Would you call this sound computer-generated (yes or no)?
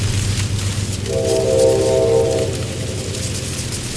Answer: no